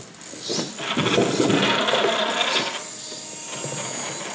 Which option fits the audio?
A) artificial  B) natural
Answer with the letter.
B